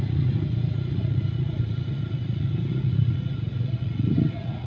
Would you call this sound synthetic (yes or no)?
yes